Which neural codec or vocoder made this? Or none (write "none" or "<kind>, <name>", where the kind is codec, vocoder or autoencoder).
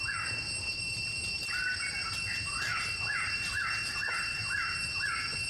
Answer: none